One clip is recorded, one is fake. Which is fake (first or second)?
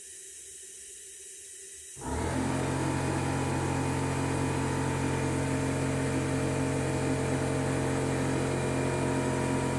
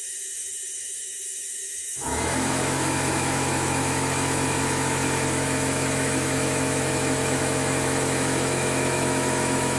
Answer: second